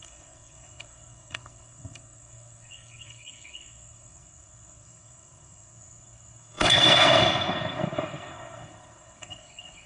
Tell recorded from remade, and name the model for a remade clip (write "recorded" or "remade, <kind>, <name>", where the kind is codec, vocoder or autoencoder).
remade, codec, SNAC